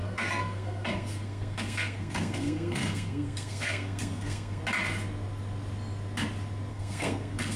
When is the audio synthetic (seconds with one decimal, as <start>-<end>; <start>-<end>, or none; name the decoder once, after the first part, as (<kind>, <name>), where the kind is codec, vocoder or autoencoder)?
0.0-4.6 (codec, SNAC); 6.7-7.6